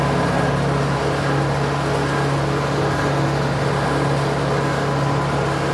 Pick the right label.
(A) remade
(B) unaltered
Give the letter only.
B